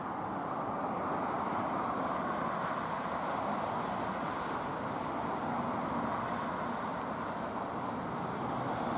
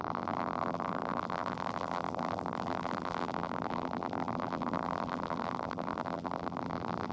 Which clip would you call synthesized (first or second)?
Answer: second